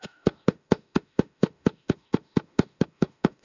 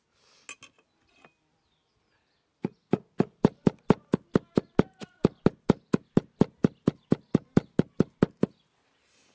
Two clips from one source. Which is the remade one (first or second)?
first